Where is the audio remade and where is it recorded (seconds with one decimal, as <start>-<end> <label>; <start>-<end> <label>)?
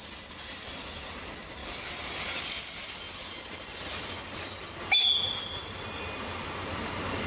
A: 0.0-7.3 recorded